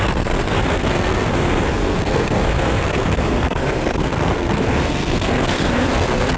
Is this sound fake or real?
fake